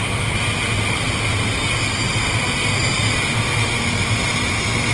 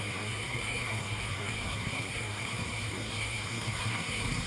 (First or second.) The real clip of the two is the first